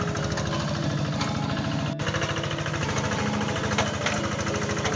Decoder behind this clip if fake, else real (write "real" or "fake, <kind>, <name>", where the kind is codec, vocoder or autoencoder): real